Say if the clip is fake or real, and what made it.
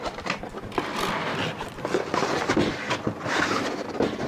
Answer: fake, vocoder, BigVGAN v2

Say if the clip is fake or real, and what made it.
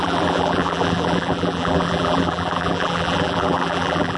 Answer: fake, vocoder, BigVGAN v2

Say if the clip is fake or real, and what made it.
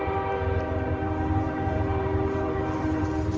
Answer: fake, vocoder, BigVGAN v2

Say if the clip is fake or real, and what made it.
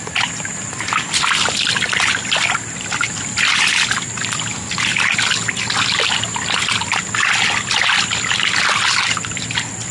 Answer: real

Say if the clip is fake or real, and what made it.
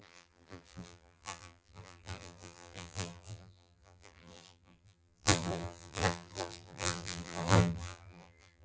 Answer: fake, vocoder, BigVGAN v2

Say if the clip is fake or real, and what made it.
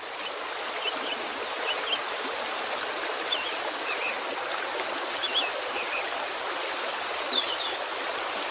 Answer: real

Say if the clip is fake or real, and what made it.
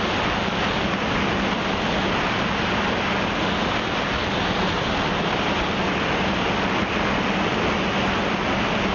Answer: real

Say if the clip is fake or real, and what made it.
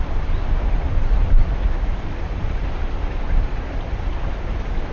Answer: fake, vocoder, BigVGAN v2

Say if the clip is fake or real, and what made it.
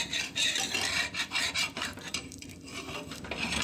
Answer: fake, vocoder, BigVGAN v2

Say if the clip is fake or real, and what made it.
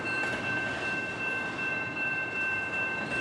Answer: real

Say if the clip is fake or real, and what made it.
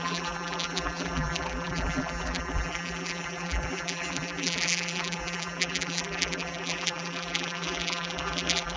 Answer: fake, vocoder, BigVGAN v2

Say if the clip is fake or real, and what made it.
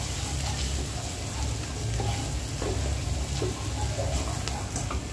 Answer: real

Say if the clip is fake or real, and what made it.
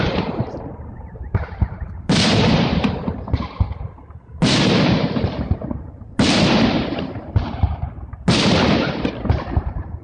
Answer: fake, vocoder, BigVGAN v2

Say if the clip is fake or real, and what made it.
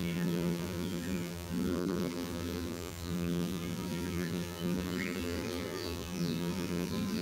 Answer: fake, vocoder, BigVGAN v2